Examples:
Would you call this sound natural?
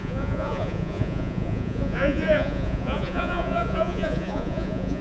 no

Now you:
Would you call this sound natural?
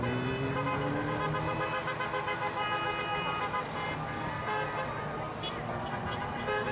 yes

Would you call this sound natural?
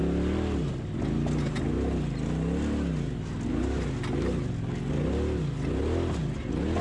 yes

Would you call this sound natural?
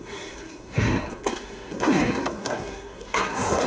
no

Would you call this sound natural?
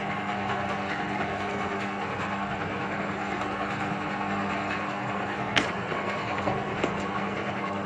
no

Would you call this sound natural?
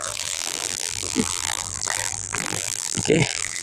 no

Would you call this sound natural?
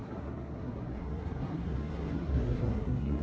no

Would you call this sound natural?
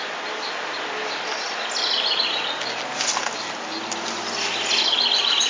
yes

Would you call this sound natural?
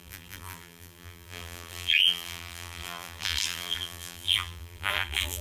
no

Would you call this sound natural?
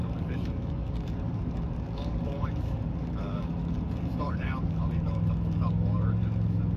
no